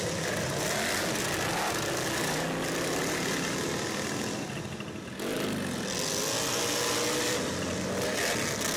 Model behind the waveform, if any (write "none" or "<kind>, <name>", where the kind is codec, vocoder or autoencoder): none